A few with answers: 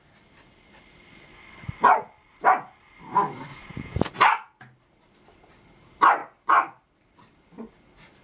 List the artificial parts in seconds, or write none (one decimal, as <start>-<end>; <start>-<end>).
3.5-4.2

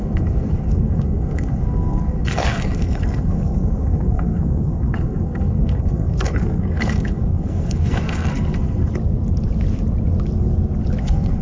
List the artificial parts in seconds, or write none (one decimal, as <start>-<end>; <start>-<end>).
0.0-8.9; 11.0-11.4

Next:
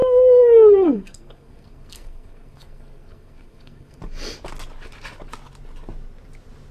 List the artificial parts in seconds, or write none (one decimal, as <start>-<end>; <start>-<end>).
0.0-4.0

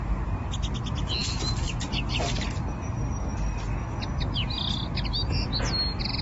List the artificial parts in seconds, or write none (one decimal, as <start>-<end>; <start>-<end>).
none